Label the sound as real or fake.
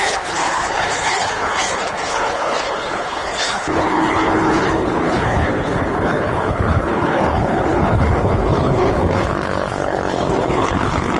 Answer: fake